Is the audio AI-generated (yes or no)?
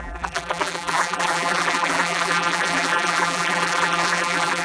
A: yes